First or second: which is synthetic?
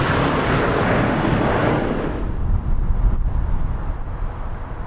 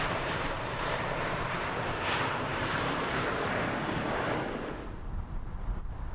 second